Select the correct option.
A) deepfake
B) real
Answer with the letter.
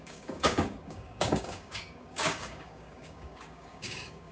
A